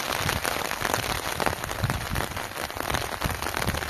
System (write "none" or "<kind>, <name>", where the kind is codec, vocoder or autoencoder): none